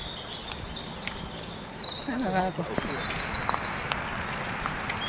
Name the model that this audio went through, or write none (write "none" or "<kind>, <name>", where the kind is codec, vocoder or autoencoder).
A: none